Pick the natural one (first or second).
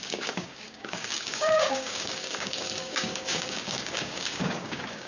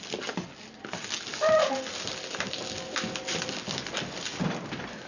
second